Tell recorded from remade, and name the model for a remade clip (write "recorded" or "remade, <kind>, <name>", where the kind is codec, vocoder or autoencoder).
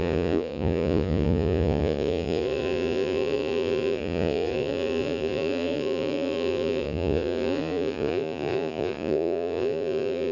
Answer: remade, vocoder, Vocos